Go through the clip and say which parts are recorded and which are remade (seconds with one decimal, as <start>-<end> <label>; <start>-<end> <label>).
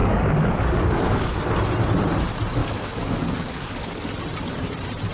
0.0-1.4 remade; 1.4-2.6 recorded; 2.6-4.1 remade; 4.1-5.1 recorded